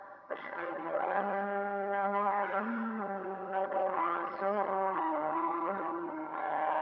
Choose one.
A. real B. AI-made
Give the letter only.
B